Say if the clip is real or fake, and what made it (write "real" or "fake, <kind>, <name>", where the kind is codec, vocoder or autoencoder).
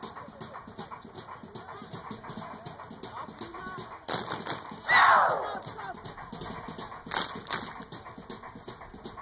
real